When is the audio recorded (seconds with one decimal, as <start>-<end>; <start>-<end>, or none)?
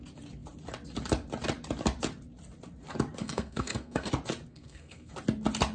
0.0-3.2; 4.1-4.5; 5.1-5.7